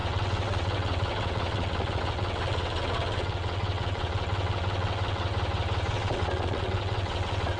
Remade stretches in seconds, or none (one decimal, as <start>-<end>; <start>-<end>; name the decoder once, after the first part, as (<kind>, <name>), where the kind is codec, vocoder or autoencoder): 0.0-5.3 (vocoder, WaveNeXt); 5.9-7.6